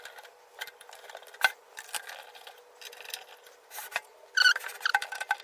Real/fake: real